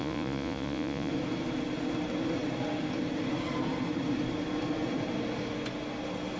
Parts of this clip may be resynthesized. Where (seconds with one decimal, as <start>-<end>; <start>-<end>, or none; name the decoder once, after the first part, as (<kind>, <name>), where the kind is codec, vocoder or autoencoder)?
0.0-1.1 (vocoder, Vocos)